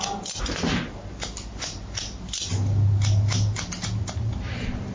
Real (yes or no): yes